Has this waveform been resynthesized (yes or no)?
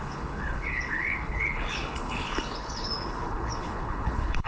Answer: yes